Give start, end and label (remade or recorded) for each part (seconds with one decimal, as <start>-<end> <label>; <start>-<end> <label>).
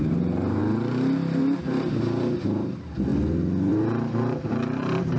0.0-0.6 remade; 0.6-1.4 recorded; 1.4-3.1 remade; 3.1-3.7 recorded; 3.7-5.2 remade